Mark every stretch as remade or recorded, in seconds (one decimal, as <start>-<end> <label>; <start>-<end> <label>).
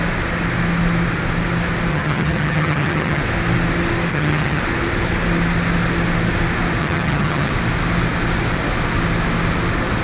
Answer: 0.0-1.9 recorded; 1.9-3.2 remade; 3.2-4.1 recorded; 4.1-4.6 remade; 4.6-6.8 recorded; 6.8-7.5 remade; 7.5-10.0 recorded